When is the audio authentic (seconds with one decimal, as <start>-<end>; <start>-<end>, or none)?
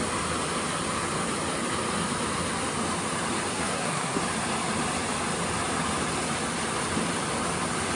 0.0-3.5; 4.2-7.9